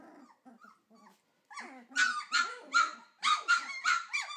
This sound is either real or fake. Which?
real